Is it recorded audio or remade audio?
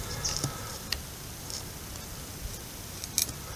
recorded